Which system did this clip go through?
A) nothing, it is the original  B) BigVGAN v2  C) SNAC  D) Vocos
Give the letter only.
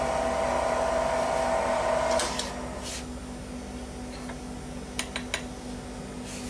A